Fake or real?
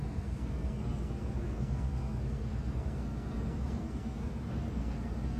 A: fake